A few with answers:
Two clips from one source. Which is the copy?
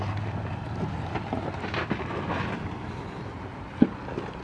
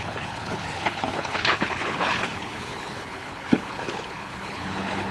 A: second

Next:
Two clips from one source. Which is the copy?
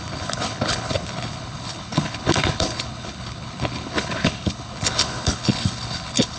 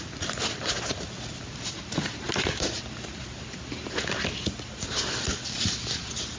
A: first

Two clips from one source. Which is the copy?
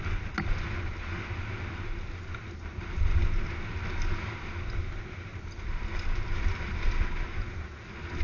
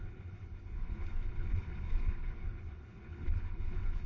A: second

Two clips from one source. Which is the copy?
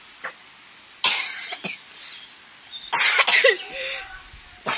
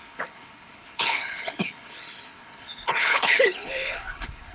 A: second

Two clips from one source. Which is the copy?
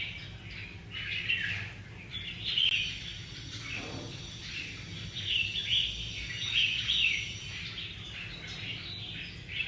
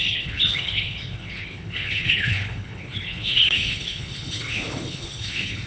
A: second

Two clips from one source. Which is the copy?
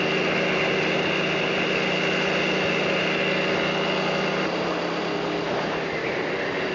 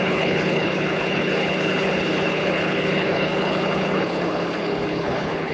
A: second